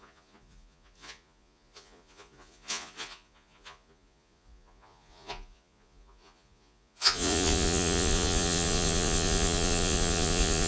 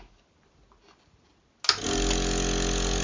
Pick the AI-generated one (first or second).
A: first